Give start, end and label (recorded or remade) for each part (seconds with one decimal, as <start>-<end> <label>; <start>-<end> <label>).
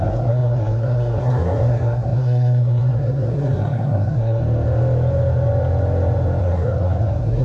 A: 0.0-4.4 remade; 4.4-6.4 recorded; 6.4-7.4 remade